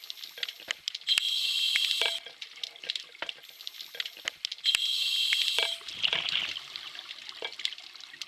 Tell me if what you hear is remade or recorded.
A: recorded